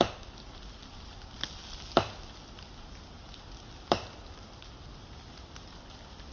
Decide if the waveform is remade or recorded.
recorded